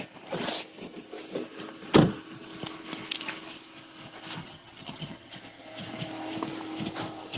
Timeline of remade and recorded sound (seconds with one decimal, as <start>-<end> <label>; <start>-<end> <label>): 0.0-4.4 recorded; 4.4-5.3 remade; 5.3-7.4 recorded